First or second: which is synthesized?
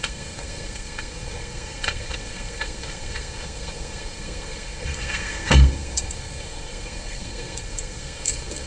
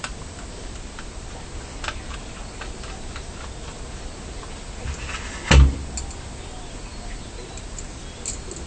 first